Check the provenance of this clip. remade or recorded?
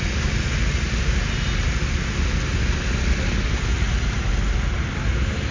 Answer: recorded